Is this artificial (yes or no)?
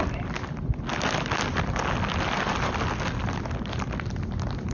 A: no